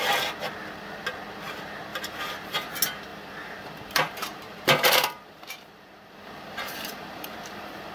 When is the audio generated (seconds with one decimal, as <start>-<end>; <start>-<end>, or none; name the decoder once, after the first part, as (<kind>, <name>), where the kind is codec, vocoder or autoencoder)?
1.9-2.7 (vocoder, BigVGAN v2); 3.1-7.9